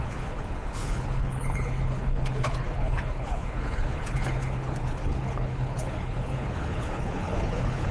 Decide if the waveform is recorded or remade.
remade